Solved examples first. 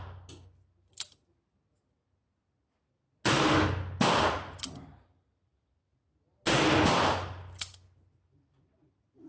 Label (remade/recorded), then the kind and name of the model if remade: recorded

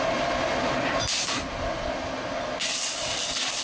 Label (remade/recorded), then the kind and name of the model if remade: recorded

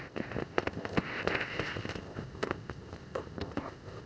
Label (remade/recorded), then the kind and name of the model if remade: remade, codec, ZipCodec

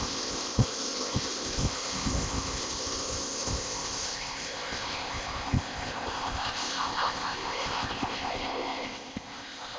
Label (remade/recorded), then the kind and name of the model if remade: remade, codec, ZipCodec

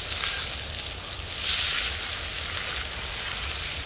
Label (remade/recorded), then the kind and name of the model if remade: recorded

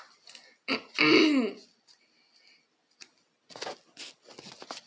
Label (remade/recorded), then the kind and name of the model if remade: recorded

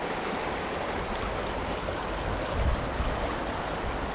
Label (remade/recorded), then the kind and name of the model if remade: recorded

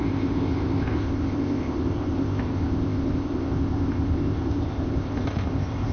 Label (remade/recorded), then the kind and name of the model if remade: remade, codec, ZipCodec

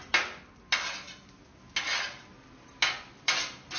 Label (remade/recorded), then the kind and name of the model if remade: recorded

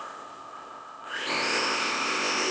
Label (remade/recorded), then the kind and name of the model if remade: remade, codec, ZipCodec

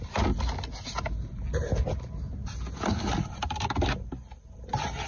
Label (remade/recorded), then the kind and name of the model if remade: recorded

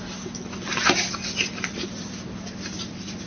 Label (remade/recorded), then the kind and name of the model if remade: recorded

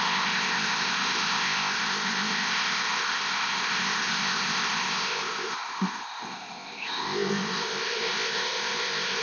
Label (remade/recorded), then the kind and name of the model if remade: remade, codec, ZipCodec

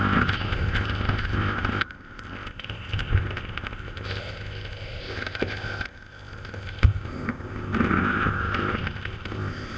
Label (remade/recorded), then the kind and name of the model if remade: remade, codec, ZipCodec